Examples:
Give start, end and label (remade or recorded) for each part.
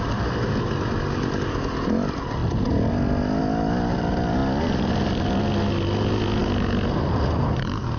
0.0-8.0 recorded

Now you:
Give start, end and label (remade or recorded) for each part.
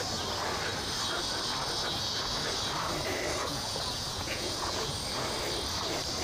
0.0-3.4 recorded; 3.4-4.9 remade; 4.9-6.2 recorded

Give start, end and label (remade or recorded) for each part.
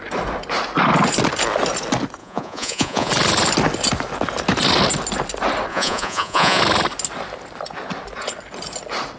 0.0-2.2 recorded; 2.2-3.1 remade; 3.1-5.7 recorded; 5.7-6.6 remade; 6.6-9.2 recorded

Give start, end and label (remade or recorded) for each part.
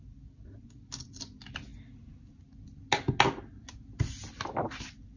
0.0-5.2 recorded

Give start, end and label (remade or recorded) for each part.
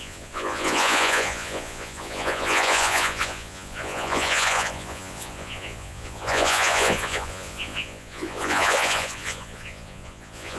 0.0-10.6 remade